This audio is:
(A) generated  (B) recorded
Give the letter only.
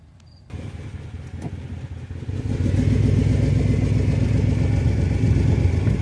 B